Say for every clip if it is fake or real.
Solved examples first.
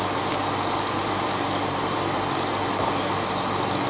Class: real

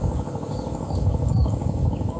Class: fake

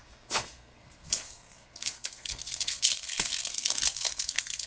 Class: fake